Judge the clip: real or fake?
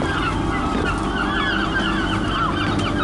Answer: real